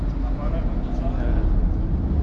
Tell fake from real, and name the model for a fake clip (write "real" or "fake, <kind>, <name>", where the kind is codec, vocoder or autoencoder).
real